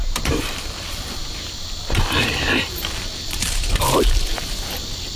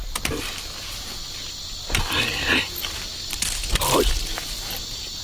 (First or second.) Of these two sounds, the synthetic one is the first